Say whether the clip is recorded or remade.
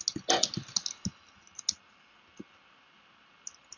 recorded